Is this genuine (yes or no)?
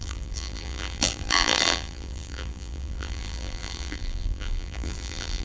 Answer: no